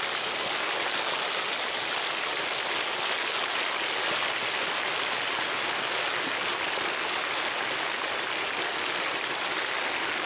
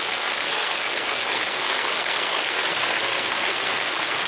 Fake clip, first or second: second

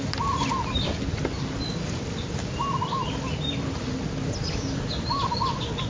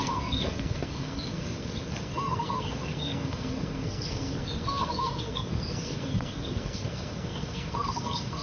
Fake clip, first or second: second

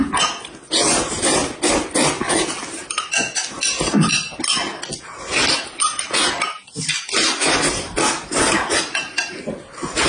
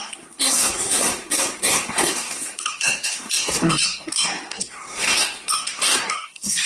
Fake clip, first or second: second